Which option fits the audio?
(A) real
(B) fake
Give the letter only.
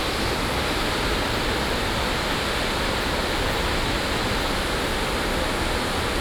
B